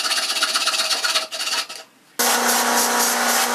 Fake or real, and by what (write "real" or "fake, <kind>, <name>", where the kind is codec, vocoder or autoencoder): real